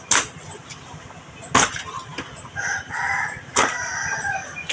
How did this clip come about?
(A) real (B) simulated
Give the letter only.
A